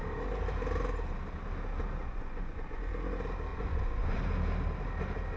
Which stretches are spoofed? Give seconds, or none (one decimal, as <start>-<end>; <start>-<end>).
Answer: 2.0-2.9; 3.5-4.2